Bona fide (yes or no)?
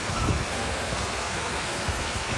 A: no